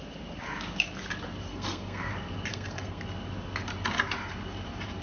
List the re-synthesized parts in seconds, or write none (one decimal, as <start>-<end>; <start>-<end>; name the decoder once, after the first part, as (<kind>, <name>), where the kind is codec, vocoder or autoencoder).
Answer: 1.5-2.1 (codec, SNAC); 2.5-3.0